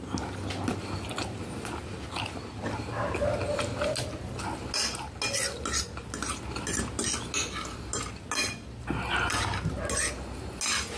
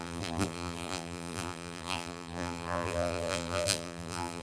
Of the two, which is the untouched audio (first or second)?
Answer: first